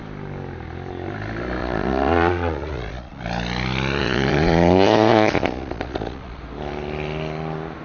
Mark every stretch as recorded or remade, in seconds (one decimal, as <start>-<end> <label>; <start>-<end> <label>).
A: 0.0-1.6 recorded; 1.6-3.2 remade; 3.2-4.0 recorded; 4.0-6.4 remade; 6.4-7.8 recorded